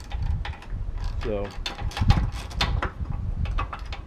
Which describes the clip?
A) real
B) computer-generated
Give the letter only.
A